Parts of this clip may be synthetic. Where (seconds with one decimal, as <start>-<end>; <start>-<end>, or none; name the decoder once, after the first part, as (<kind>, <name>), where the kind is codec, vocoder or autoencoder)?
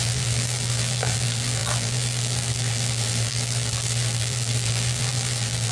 0.0-5.7 (vocoder, BigVGAN v2)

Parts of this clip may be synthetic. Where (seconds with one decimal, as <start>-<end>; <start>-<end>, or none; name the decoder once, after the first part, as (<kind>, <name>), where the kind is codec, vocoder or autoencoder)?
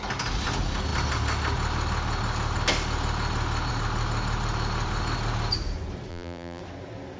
6.1-6.6 (vocoder, BigVGAN v2)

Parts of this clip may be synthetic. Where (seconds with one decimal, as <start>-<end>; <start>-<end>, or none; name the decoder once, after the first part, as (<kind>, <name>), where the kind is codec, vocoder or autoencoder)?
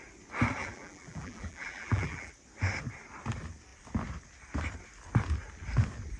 0.6-2.3 (vocoder, BigVGAN v2)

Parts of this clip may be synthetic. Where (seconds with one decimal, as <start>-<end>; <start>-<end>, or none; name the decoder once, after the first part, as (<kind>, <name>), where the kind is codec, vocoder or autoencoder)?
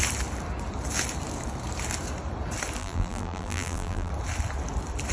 2.8-4.1 (vocoder, BigVGAN v2)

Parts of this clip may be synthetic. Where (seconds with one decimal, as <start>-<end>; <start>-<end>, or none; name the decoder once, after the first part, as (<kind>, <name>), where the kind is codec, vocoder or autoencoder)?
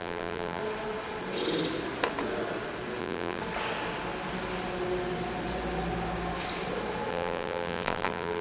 0.0-0.6 (vocoder, BigVGAN v2); 3.0-3.4; 7.1-8.4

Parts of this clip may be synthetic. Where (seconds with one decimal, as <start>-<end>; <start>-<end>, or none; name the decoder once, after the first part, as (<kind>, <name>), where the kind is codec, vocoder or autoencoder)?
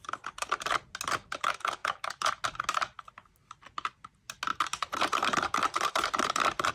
4.5-6.7 (vocoder, BigVGAN v2)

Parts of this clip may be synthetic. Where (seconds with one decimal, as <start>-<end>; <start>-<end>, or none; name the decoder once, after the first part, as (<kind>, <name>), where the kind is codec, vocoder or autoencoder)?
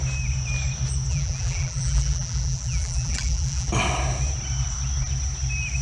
1.1-3.7 (vocoder, BigVGAN v2)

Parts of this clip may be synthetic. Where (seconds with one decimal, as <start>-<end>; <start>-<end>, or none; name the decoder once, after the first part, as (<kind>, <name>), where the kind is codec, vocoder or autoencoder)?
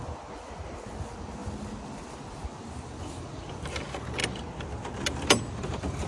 none